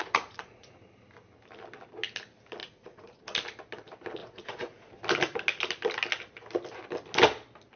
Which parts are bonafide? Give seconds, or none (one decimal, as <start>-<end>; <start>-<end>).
0.7-2.6; 3.2-4.2; 4.9-7.8